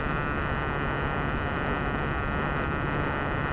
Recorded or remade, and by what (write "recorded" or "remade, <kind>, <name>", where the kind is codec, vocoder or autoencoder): recorded